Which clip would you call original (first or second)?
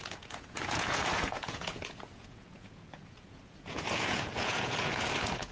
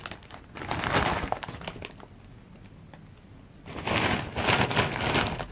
second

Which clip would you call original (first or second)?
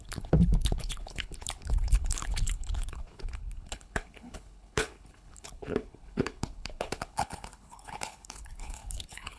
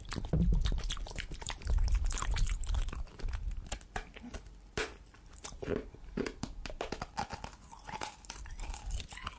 second